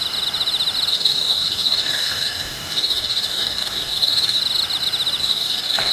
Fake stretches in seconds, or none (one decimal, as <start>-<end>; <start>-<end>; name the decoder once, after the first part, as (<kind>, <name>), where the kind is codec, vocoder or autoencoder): 0.9-4.4 (codec, DAC); 5.2-5.9